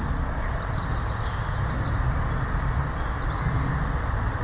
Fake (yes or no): no